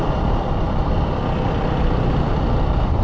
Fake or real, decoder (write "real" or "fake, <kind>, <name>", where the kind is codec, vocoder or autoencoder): real